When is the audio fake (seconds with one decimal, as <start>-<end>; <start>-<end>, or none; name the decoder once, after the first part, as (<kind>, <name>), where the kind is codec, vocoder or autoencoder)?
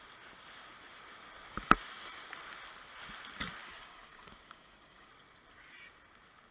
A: 3.6-5.1 (codec, DAC)